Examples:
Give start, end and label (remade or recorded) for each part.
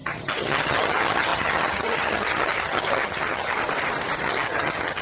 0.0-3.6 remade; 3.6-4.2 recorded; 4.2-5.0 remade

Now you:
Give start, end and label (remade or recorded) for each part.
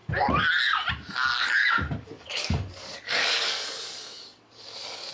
0.0-1.6 recorded; 1.6-5.1 remade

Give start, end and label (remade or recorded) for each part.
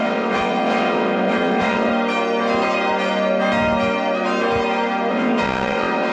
0.0-1.9 remade; 1.9-5.1 recorded; 5.1-6.1 remade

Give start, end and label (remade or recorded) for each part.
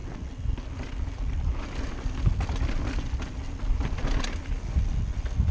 0.0-5.5 recorded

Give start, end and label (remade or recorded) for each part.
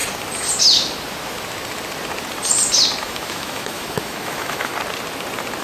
0.0-3.0 recorded; 3.0-4.7 remade; 4.7-5.6 recorded